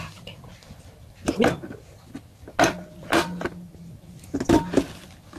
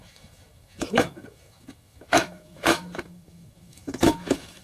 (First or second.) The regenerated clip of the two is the second